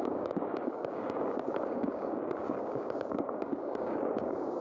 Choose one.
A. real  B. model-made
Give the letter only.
B